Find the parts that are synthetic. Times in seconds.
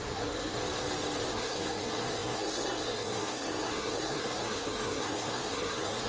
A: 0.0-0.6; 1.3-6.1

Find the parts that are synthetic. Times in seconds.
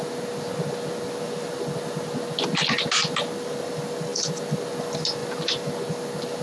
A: none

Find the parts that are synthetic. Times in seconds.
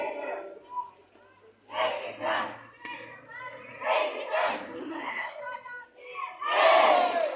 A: 4.8-5.4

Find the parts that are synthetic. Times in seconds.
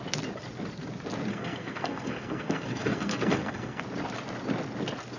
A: 1.3-3.8